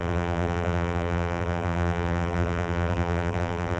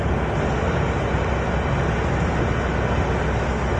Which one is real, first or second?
second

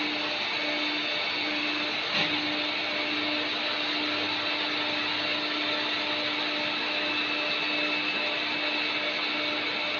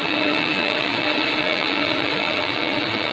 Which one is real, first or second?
first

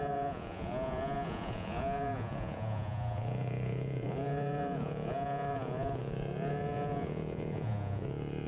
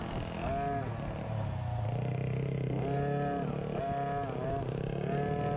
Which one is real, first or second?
second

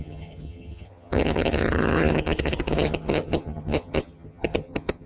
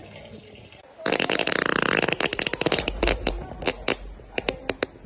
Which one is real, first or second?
second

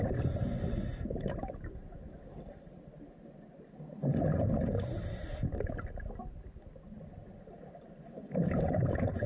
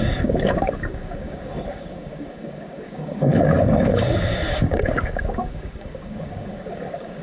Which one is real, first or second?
first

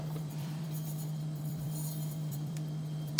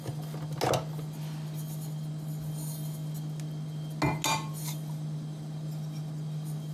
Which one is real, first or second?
second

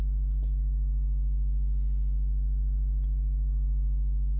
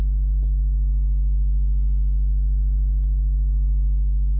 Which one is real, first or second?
first